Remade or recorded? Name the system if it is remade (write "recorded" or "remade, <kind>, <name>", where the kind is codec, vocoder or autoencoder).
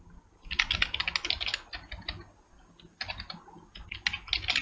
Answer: recorded